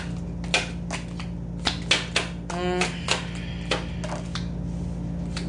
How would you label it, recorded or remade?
recorded